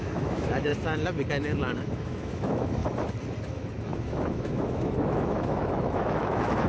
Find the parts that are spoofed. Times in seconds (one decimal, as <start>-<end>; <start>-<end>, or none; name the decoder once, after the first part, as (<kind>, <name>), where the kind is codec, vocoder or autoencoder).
0.0-0.7 (autoencoder, DAC-VAE); 1.3-2.8; 3.4-6.7